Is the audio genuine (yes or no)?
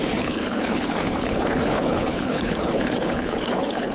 no